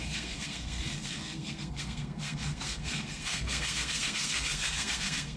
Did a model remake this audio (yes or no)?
yes